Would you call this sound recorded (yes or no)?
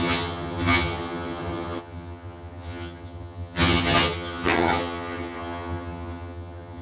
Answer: no